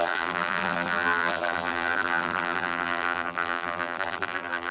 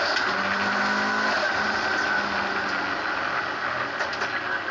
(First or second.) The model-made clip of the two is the first